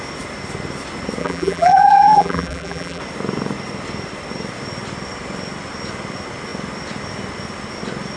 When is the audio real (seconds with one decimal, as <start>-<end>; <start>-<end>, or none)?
0.0-1.2; 3.0-8.2

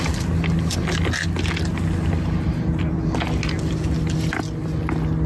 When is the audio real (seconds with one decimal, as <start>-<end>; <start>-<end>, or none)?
0.0-5.3

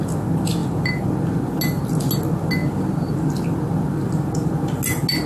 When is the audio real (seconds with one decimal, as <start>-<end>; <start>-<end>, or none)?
0.0-5.3

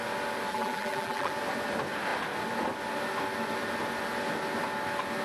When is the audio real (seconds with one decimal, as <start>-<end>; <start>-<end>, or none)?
0.0-0.5; 1.3-5.2

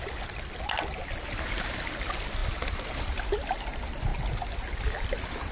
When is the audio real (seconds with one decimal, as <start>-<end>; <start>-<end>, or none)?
1.0-1.5; 4.1-5.0

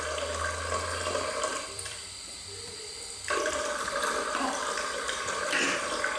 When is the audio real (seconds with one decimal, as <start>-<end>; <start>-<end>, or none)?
0.0-1.5; 5.2-6.2

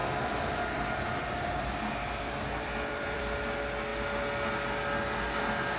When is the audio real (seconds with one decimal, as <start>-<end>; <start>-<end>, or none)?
3.4-5.8

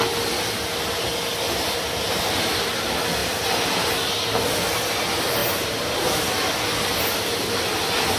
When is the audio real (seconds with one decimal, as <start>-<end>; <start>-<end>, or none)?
0.0-3.2; 4.5-5.4; 6.3-8.2